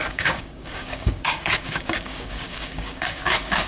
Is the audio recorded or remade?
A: remade